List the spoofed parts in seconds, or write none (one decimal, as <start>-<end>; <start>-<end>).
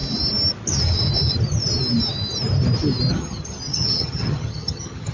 3.1-5.1